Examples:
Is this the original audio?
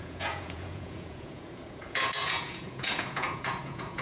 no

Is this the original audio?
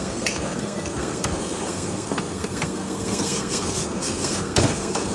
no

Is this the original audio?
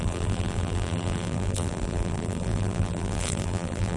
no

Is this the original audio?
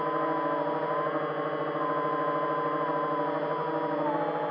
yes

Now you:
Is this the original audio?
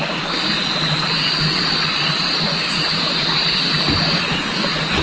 yes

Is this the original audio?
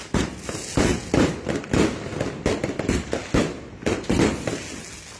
yes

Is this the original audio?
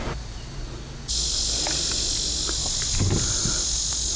yes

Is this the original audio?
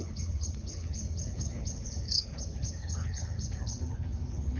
no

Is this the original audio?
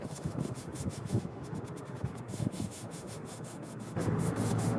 no